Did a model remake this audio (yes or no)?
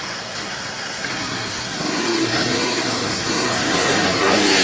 yes